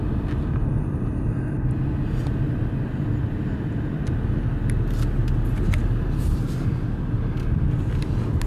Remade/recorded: recorded